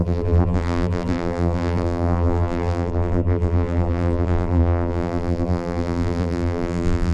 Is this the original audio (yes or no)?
no